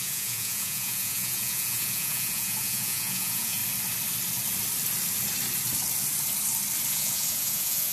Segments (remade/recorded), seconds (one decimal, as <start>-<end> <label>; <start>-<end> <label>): 0.0-3.6 remade; 3.6-6.9 recorded; 6.9-7.9 remade